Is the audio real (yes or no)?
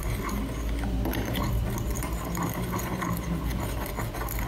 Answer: yes